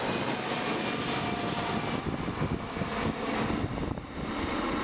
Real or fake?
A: real